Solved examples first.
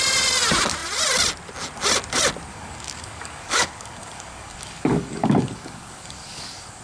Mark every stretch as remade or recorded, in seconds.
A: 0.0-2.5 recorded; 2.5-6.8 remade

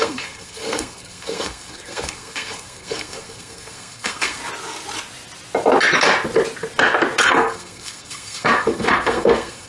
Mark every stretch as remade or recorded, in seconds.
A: 0.0-4.4 remade; 4.4-7.3 recorded; 7.3-9.7 remade

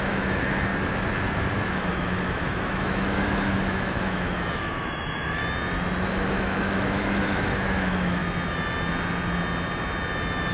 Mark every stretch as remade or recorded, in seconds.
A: 0.0-0.7 remade; 0.7-1.7 recorded; 1.7-5.4 remade; 5.4-6.0 recorded; 6.0-8.2 remade; 8.2-10.5 recorded

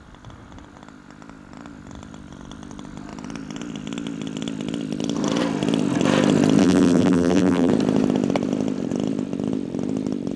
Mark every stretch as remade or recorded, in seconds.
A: 0.0-6.6 recorded; 6.6-7.7 remade; 7.7-10.4 recorded

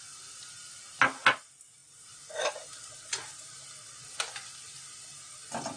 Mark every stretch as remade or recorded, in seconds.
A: 0.0-5.8 recorded